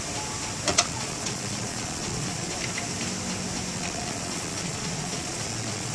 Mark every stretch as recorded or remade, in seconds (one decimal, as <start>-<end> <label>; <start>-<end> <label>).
0.0-0.7 recorded; 0.7-2.5 remade; 2.5-3.7 recorded; 3.7-5.9 remade